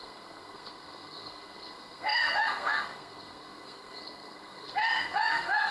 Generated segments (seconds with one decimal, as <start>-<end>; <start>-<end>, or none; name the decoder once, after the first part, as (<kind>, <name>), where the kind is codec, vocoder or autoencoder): 0.0-5.7 (codec, SNAC)